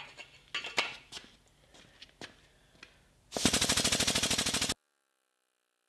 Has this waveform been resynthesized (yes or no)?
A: no